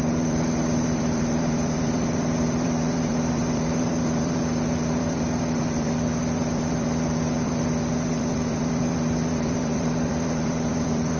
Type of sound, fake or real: fake